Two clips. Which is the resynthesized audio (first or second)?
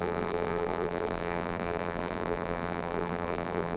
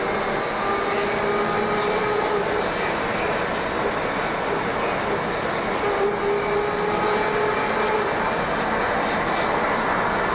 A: first